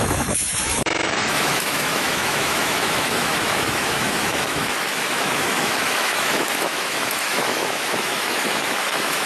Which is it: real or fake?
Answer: fake